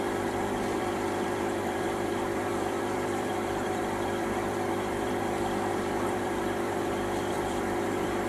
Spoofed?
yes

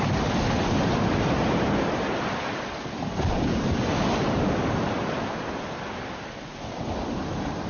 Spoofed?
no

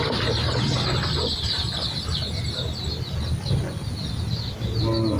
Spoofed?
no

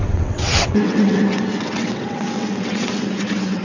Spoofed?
yes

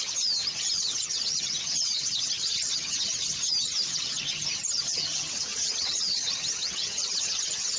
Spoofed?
yes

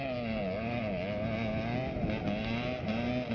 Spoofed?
no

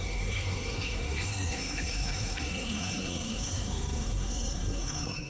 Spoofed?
yes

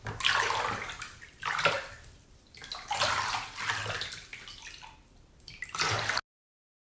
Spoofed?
no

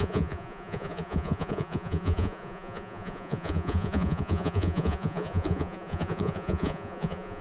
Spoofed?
yes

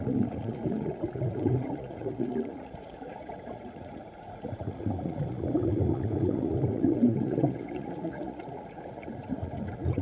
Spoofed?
yes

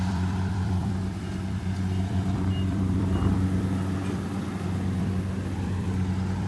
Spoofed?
yes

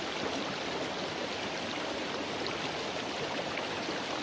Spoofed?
no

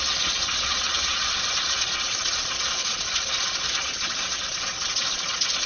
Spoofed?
yes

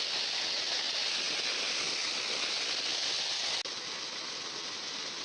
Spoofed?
no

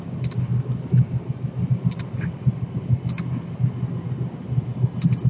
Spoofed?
no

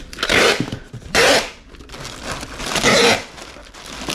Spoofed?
no